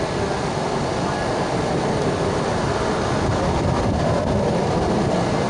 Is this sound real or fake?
real